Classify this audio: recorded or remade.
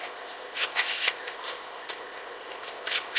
remade